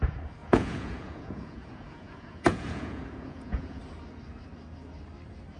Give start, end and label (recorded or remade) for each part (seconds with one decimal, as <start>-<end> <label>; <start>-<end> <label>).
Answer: 0.0-0.4 recorded; 0.4-3.8 remade; 3.8-5.6 recorded